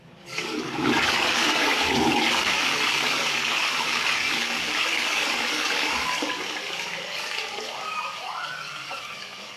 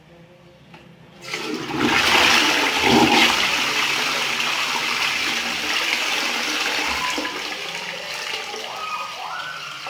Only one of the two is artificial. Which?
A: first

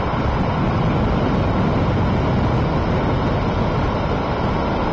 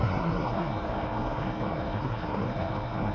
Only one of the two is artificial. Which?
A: second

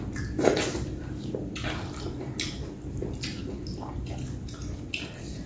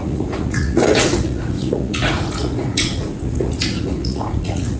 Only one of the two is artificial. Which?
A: second